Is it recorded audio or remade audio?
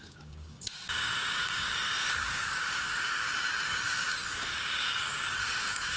remade